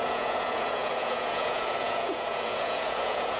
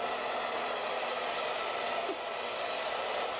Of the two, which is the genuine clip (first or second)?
second